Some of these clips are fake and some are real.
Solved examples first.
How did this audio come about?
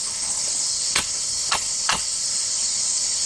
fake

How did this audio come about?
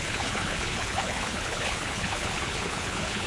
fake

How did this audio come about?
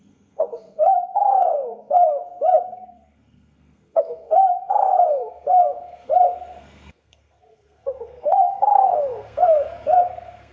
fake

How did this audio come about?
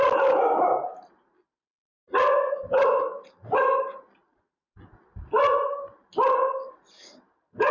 real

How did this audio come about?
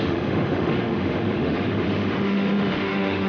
fake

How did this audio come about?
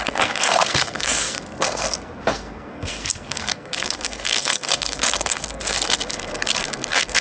fake